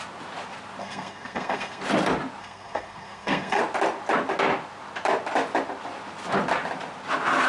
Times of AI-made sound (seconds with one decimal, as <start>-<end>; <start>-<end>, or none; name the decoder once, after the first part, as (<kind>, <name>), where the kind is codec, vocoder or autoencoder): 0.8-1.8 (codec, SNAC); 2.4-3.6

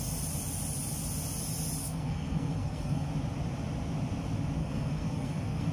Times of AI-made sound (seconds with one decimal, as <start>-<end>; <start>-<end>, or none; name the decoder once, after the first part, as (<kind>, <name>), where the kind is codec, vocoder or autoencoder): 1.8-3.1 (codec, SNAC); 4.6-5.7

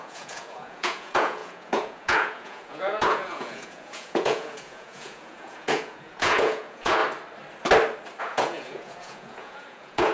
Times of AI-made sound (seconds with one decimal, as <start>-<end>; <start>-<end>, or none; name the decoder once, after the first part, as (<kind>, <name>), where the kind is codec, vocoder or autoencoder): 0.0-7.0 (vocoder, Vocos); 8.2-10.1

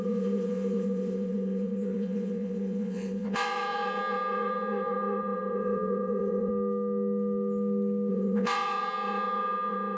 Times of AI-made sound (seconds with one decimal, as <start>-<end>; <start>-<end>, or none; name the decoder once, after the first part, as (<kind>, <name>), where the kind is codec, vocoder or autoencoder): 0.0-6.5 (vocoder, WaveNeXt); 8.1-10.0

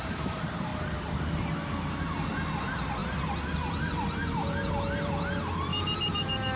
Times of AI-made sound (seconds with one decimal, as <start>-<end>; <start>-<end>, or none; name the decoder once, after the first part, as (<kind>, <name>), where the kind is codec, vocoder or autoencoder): 0.0-0.7 (vocoder, BigVGAN v2); 2.6-3.0; 3.8-6.6